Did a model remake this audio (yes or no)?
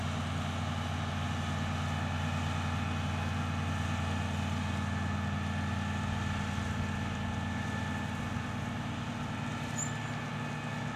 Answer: no